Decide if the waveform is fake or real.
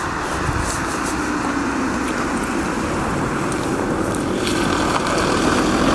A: real